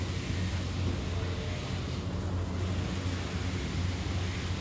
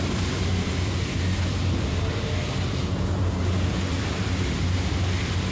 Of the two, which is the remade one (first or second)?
second